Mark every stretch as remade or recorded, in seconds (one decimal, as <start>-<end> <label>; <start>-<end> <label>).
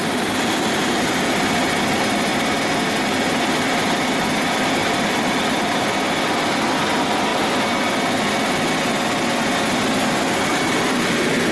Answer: 0.0-4.8 recorded; 4.8-5.8 remade; 5.8-11.5 recorded